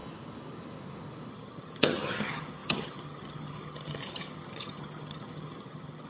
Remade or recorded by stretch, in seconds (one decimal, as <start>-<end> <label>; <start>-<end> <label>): 0.0-1.3 recorded; 1.3-6.1 remade